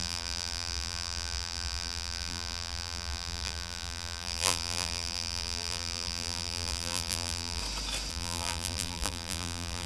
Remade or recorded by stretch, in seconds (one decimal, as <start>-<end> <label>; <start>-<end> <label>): 0.0-7.6 remade; 7.6-8.1 recorded; 8.1-9.9 remade